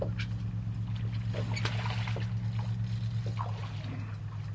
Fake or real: real